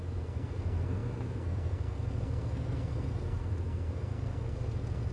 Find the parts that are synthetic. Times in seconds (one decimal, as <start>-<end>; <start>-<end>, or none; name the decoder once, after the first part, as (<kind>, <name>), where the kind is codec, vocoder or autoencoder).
0.0-5.1 (codec, SNAC)